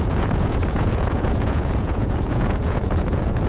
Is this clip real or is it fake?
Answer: fake